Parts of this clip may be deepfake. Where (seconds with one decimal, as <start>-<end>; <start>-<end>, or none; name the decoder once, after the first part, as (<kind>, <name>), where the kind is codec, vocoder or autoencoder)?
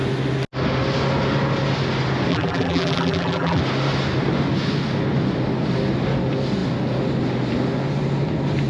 2.3-3.6 (vocoder, BigVGAN v2)